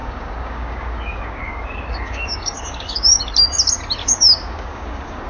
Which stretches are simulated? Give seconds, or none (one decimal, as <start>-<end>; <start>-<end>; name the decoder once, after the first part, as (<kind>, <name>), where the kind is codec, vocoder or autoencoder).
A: 0.0-3.2 (codec, DAC); 4.0-5.3